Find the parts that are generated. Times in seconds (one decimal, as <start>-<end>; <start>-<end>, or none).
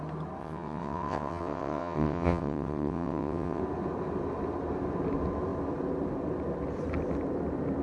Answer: 0.4-3.6